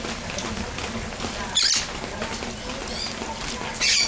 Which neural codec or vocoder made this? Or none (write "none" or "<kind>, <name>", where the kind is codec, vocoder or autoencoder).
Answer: none